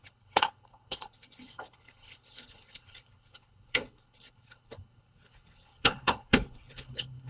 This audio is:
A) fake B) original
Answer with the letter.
A